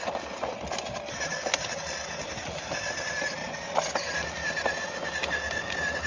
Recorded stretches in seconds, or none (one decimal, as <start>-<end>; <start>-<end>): 0.0-6.1